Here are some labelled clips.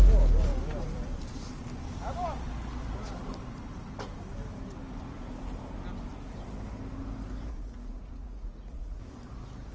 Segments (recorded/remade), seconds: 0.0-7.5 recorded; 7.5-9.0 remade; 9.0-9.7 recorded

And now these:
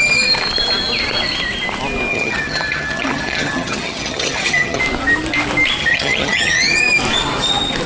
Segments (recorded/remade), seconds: 0.0-2.1 recorded; 2.1-4.8 remade; 4.8-5.8 recorded; 5.8-6.8 remade; 6.8-7.9 recorded

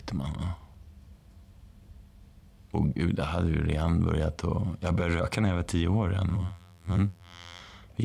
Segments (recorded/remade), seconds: 0.0-6.3 recorded; 6.3-7.6 remade; 7.6-8.0 recorded